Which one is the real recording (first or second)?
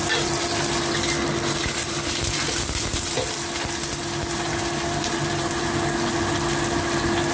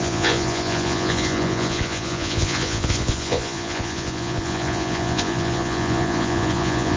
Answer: first